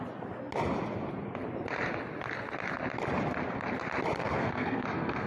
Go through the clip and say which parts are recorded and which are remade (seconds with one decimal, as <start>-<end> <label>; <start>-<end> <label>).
0.0-4.2 recorded; 4.2-5.3 remade

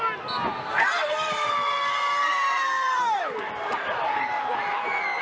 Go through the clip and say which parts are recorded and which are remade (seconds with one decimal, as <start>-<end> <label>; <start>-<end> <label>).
0.0-0.6 recorded; 0.6-3.2 remade; 3.2-5.2 recorded

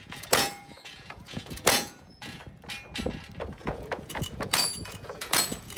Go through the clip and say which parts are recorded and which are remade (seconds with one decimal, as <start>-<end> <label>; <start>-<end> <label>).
0.0-2.4 remade; 2.4-3.5 recorded; 3.5-5.8 remade

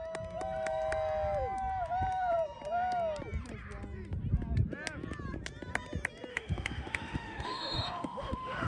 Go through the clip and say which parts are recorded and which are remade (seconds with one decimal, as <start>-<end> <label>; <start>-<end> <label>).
0.0-6.3 recorded; 6.3-8.7 remade

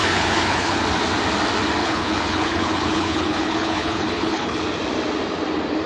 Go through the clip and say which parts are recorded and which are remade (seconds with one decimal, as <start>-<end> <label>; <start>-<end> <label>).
0.0-0.8 remade; 0.8-1.8 recorded; 1.8-4.6 remade; 4.6-5.9 recorded

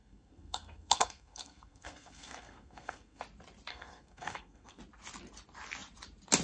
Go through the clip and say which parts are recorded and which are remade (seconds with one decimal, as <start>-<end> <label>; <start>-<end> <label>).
0.0-3.2 remade; 3.2-3.7 recorded; 3.7-4.8 remade; 4.8-6.4 recorded

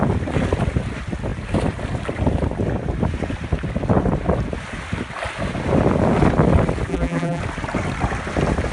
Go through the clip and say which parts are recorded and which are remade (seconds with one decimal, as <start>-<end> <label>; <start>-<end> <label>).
0.0-6.9 recorded; 6.9-7.4 remade; 7.4-8.7 recorded